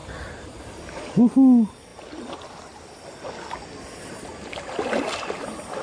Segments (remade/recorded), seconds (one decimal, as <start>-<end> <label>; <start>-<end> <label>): 0.0-0.6 remade; 0.6-5.8 recorded